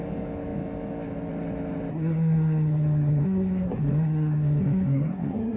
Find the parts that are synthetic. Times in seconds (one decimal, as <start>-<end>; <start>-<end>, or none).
1.9-5.6